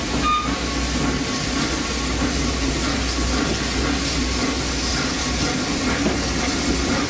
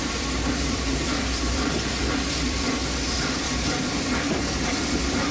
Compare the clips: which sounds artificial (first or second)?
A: second